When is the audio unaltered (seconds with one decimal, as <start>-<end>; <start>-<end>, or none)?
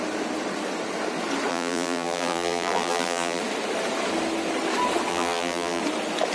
0.0-1.5; 3.4-5.1; 5.8-6.3